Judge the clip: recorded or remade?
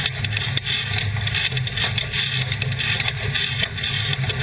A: recorded